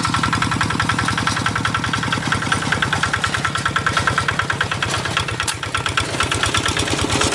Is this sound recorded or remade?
recorded